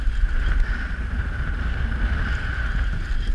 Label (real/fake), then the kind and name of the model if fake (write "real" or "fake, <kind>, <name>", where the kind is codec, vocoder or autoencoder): real